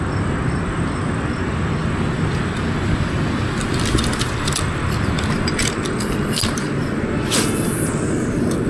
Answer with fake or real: fake